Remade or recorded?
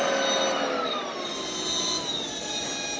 recorded